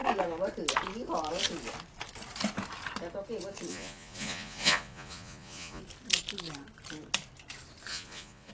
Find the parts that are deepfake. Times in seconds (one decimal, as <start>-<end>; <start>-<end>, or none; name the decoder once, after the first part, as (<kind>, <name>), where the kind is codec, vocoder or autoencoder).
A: 3.7-5.8 (vocoder, Vocos); 7.9-8.5